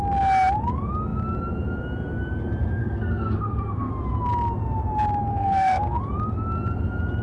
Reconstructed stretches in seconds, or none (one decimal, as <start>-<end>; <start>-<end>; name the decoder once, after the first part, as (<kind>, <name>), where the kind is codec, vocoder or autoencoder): 2.8-3.9 (codec, SNAC); 5.3-6.0